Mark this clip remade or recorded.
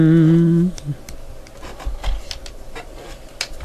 recorded